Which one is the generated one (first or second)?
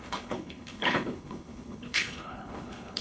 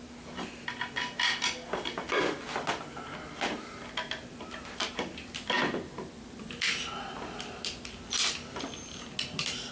first